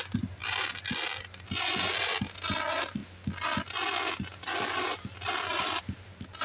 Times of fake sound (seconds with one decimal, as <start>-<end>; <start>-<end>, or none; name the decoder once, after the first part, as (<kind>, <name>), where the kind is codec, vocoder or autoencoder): none